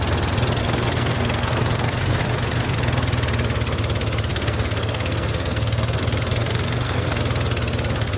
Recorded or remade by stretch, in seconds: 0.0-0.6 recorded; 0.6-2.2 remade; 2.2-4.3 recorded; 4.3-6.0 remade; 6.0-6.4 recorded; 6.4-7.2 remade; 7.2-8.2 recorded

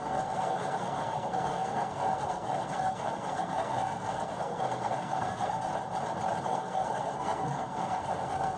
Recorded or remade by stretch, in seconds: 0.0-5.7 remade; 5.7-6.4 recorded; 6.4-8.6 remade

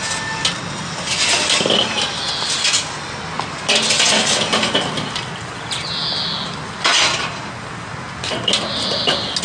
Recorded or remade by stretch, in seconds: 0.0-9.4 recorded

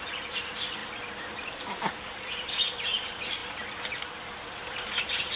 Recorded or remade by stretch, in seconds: 0.0-5.4 recorded

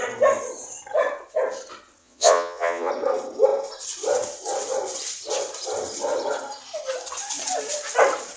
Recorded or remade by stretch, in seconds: 0.0-2.0 recorded; 2.0-2.9 remade; 2.9-8.4 recorded

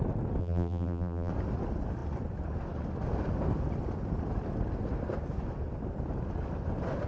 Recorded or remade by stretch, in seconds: 0.0-0.4 recorded; 0.4-1.3 remade; 1.3-7.1 recorded

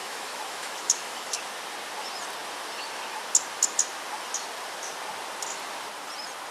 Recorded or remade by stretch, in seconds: 0.0-1.3 remade; 1.3-6.5 recorded

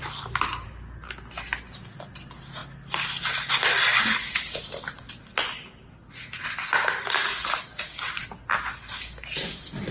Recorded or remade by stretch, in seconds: 0.0-0.7 remade; 0.7-9.9 recorded